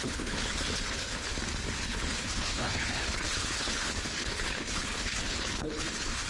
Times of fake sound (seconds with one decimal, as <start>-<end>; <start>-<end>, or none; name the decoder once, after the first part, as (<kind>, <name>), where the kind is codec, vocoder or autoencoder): 0.0-1.3 (codec, HILCodec); 1.8-6.3